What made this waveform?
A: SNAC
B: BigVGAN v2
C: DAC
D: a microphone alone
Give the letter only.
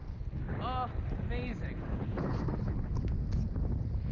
D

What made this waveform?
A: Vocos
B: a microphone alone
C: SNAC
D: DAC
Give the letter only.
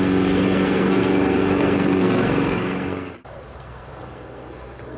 C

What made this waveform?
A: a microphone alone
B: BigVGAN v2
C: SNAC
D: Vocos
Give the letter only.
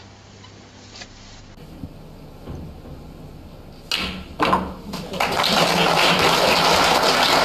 A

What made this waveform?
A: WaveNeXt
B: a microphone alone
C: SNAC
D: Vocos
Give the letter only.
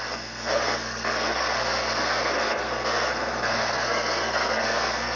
C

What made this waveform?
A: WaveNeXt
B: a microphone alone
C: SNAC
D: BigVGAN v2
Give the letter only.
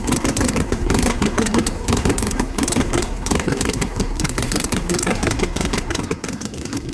C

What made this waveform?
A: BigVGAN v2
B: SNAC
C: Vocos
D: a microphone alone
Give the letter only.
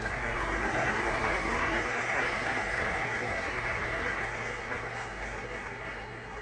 B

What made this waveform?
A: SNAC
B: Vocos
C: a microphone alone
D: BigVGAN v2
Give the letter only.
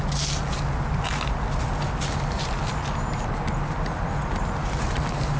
C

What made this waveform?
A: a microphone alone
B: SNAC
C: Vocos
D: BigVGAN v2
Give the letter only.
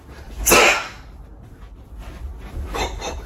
A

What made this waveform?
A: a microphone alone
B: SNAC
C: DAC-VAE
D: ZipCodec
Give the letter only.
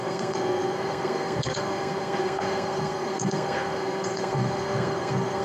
B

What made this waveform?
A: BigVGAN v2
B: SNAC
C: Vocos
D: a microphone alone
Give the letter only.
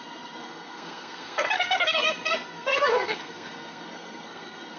B